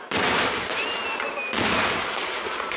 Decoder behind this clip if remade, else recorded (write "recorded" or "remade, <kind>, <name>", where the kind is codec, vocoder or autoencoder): recorded